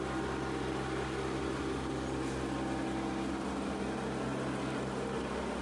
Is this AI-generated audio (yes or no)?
no